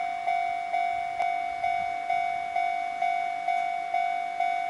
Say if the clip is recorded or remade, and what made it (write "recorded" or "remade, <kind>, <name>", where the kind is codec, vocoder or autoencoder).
recorded